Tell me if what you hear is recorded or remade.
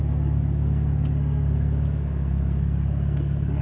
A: remade